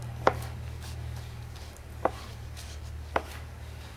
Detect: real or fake fake